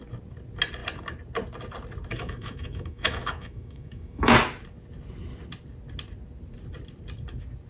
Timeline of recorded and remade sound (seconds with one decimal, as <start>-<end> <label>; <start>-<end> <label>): 0.0-2.1 recorded; 2.1-4.3 remade; 4.3-7.7 recorded